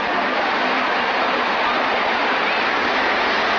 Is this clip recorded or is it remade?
recorded